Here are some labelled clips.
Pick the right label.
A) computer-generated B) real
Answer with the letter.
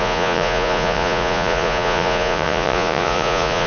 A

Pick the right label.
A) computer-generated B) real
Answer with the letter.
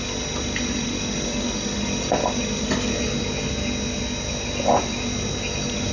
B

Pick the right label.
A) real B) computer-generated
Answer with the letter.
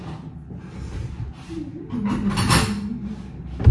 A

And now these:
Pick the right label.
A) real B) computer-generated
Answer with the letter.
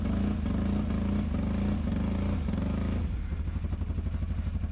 A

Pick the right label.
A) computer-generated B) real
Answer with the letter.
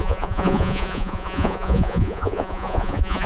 A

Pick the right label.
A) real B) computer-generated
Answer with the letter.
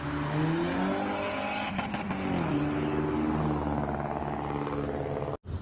A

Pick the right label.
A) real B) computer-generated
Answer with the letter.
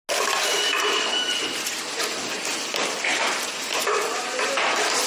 A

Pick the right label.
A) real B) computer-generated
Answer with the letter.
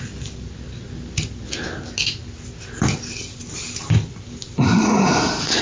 A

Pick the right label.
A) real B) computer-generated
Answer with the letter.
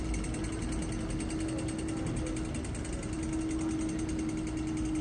A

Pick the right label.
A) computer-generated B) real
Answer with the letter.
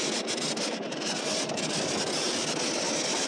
B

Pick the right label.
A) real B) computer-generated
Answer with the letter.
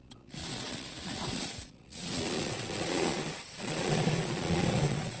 B